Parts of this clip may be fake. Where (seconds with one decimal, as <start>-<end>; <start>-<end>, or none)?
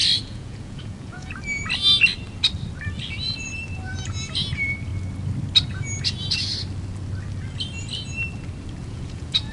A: 0.0-1.3; 8.8-9.5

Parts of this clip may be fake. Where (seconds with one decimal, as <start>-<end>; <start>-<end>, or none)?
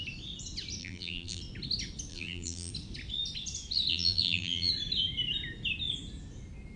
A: 0.8-1.4; 2.1-2.7; 3.9-4.7